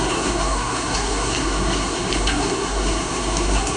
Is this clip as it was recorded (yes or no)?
no